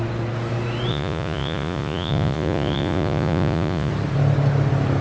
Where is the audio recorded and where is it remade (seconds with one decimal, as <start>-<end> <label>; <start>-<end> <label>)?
0.0-0.9 recorded; 0.9-3.9 remade; 3.9-5.0 recorded